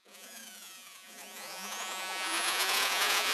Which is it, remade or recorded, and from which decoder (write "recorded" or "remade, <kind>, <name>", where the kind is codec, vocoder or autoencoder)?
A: remade, vocoder, Vocos